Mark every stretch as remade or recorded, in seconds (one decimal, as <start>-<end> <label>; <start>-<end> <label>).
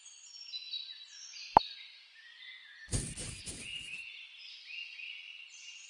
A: 0.0-5.9 recorded